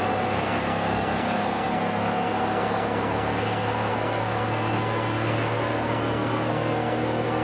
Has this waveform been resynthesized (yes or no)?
yes